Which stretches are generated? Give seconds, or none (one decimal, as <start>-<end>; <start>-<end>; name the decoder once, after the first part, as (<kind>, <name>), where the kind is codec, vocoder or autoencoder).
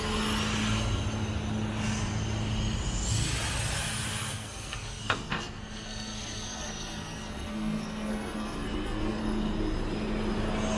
4.3-9.2 (codec, SNAC)